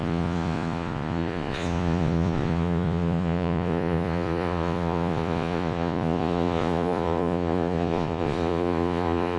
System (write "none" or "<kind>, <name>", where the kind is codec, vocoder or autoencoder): vocoder, Vocos